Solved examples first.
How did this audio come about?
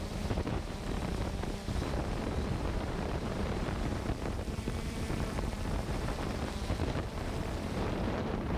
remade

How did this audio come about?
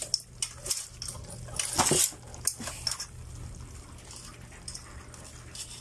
recorded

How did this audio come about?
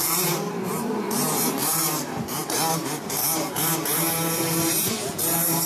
remade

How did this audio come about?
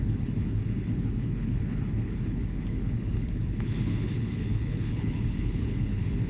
remade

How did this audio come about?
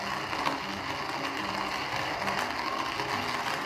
recorded